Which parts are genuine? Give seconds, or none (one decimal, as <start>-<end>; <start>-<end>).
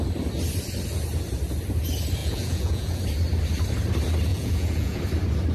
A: 0.0-2.2; 3.0-4.3; 5.0-5.5